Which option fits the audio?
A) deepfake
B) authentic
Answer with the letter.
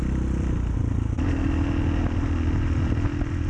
B